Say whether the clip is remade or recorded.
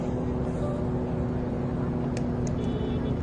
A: recorded